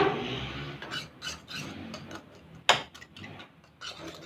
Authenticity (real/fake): real